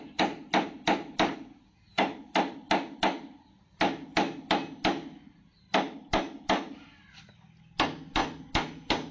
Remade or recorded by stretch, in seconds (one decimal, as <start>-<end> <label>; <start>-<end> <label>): 0.0-9.1 recorded